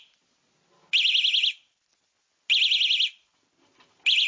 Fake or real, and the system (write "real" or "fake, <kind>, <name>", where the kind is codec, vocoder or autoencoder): real